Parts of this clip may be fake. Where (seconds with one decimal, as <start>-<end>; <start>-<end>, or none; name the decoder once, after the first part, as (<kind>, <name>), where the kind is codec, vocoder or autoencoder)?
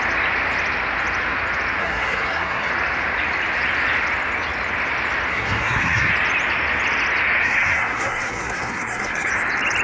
1.8-2.7 (codec, SNAC); 5.3-6.1; 7.4-9.3